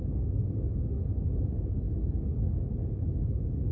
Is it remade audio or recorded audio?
remade